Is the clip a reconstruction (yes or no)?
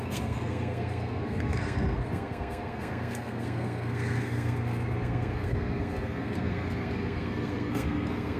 yes